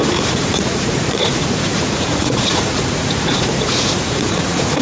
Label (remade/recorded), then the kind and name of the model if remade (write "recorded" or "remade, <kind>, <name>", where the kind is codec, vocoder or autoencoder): remade, vocoder, Vocos